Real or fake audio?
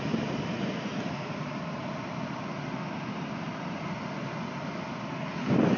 real